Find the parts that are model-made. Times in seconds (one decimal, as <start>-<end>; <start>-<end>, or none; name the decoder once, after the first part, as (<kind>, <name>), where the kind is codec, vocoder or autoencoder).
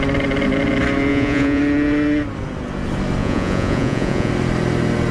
1.1-1.6 (vocoder, Vocos); 3.2-4.3